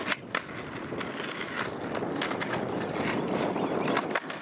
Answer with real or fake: real